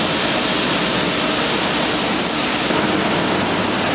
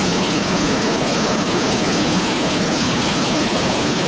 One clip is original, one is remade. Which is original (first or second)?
first